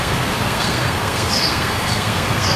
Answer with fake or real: fake